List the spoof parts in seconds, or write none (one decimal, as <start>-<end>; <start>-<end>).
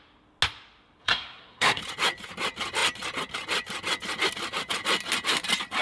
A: 1.0-1.8